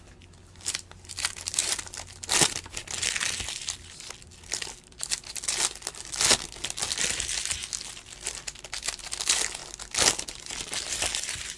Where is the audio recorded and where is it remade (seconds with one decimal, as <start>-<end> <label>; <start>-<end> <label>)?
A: 0.0-11.6 recorded